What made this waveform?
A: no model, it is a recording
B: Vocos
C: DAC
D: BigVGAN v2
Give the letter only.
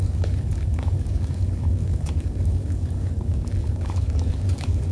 C